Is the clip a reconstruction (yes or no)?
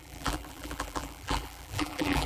yes